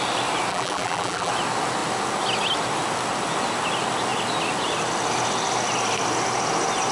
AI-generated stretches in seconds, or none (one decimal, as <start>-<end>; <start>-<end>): 0.5-1.3